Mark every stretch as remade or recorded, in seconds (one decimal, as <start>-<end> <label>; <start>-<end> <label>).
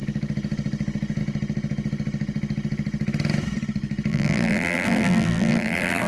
0.0-4.1 recorded; 4.1-6.1 remade